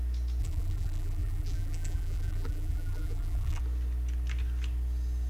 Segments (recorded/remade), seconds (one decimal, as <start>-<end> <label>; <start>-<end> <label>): 0.0-0.4 recorded; 0.4-3.6 remade; 3.6-5.3 recorded